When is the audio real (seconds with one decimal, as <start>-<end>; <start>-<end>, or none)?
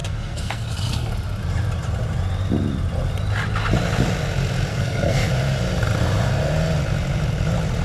1.1-4.7; 5.3-7.8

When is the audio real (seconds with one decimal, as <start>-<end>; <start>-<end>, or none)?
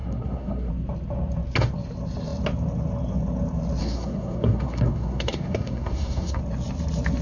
0.7-3.8; 6.4-7.2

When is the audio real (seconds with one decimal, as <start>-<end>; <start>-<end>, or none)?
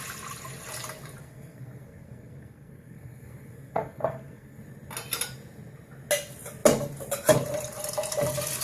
0.0-1.2; 4.6-8.6